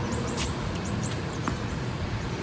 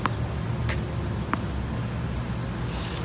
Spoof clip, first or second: first